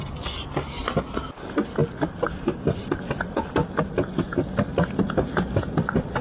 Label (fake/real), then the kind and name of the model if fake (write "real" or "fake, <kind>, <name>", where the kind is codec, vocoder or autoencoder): real